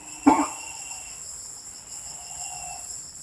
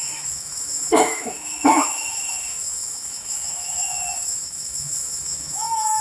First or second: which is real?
first